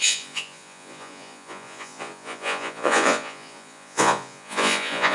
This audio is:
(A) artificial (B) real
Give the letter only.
A